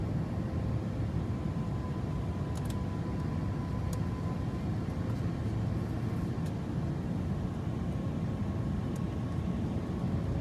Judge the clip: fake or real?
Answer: real